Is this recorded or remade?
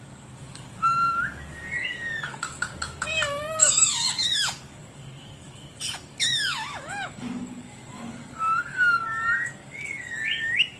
remade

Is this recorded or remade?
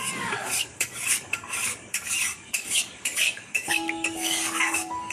remade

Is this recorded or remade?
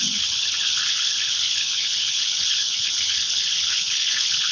remade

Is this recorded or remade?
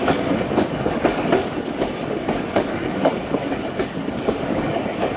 remade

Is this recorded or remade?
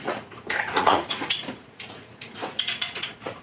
remade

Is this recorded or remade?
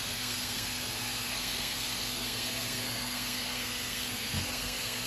remade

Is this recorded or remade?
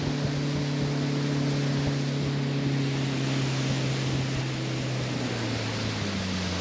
recorded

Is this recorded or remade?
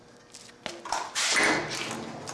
recorded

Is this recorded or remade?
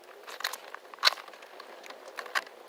recorded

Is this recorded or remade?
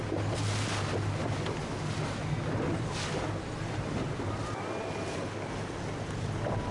recorded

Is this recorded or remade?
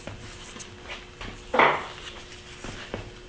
recorded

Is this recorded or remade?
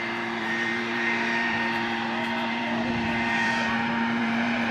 remade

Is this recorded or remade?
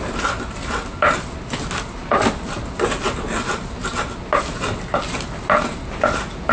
recorded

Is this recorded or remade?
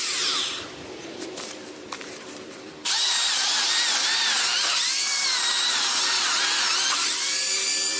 remade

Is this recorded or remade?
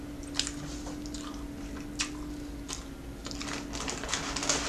recorded